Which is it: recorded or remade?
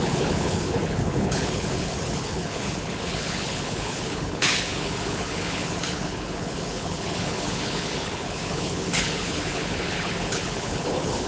remade